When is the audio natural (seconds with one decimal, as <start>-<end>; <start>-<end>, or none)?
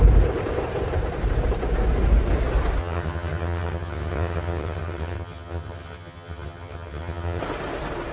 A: 0.0-2.8; 7.4-8.1